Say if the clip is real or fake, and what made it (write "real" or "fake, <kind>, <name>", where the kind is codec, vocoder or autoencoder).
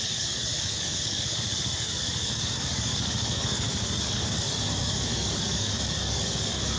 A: fake, codec, DAC